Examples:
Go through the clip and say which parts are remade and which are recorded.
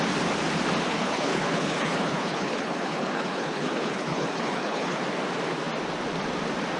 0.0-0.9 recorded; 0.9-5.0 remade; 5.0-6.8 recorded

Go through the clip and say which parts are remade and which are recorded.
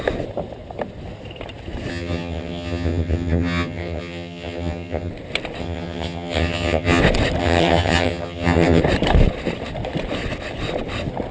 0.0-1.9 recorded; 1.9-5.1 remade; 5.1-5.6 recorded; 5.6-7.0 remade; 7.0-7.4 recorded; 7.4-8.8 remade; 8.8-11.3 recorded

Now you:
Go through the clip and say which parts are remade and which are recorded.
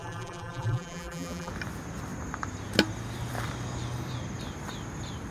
0.0-1.5 remade; 1.5-5.3 recorded